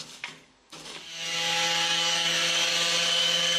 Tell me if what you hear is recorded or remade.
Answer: remade